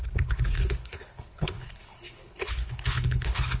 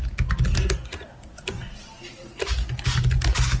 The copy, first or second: first